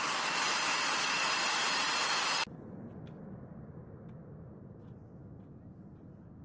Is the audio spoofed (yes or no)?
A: no